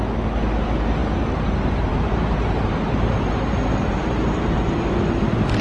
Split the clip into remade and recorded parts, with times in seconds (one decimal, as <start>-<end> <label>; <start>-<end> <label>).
0.0-1.9 recorded; 1.9-5.6 remade